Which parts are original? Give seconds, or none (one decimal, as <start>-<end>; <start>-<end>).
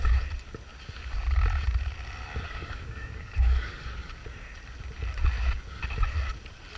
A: 0.0-2.5; 4.2-6.8